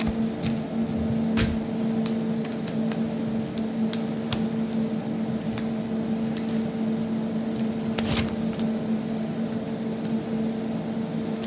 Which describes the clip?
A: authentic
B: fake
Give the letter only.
A